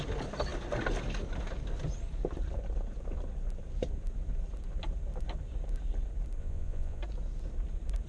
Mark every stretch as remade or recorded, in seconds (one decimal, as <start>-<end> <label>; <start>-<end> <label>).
0.0-6.4 recorded; 6.4-7.0 remade; 7.0-8.1 recorded